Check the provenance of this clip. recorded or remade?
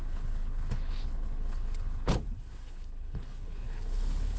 remade